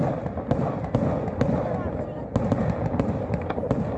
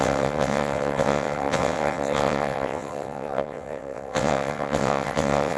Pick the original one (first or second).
first